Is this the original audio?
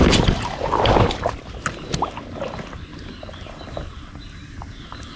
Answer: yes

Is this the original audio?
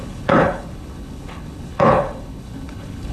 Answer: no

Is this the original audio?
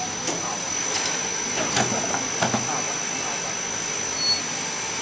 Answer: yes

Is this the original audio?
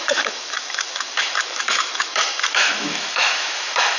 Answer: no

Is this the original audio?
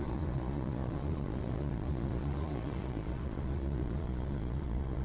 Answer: no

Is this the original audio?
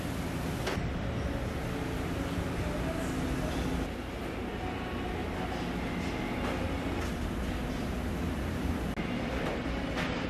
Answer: yes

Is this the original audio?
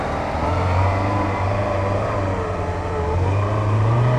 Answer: no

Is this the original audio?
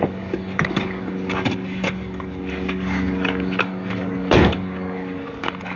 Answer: no